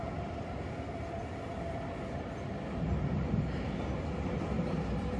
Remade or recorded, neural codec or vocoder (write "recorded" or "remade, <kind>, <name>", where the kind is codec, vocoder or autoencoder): recorded